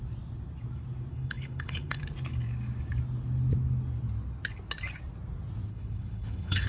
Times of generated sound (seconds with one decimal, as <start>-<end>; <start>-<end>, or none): 1.1-2.0; 5.7-6.7

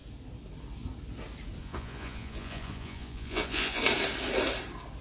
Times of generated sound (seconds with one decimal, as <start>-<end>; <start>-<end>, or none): 1.6-3.8

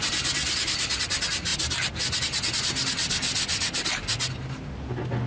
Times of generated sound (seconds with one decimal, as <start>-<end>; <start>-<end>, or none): none

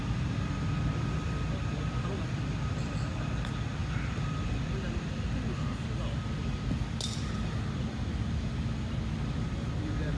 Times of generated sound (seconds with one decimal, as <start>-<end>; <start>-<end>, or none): none